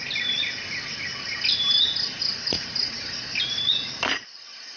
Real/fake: real